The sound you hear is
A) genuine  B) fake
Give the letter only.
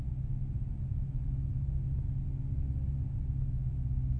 A